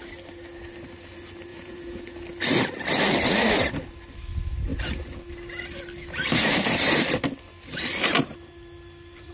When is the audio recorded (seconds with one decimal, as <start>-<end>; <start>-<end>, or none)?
0.0-1.5; 2.0-9.3